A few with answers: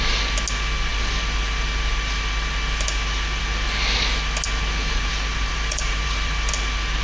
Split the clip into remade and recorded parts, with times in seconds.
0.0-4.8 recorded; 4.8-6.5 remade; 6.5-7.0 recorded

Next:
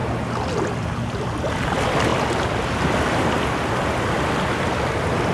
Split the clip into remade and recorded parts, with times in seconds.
0.0-5.3 recorded

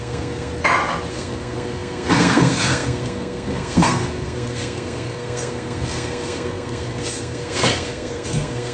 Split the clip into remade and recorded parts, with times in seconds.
0.0-0.5 remade; 0.5-1.1 recorded; 1.1-8.7 remade